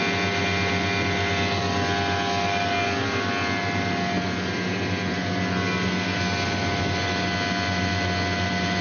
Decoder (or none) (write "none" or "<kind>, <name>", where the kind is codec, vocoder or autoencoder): none